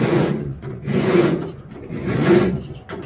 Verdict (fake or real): fake